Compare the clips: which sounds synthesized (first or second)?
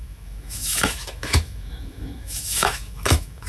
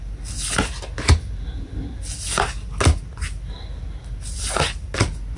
first